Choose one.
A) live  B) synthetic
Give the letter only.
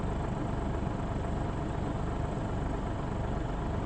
A